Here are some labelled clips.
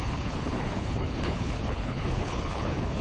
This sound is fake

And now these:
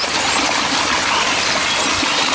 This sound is real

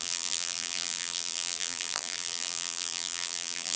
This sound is fake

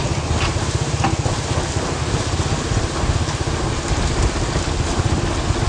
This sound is real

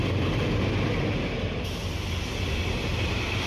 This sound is real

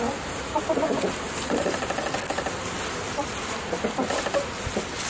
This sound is real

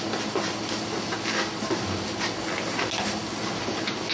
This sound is real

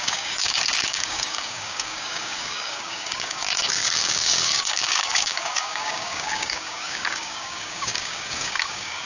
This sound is fake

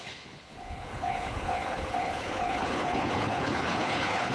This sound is fake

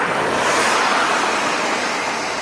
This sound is real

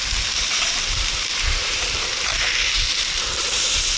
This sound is fake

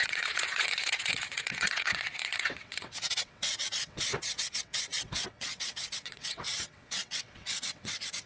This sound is fake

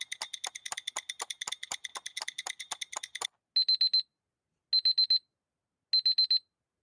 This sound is real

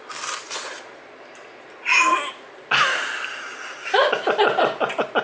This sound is real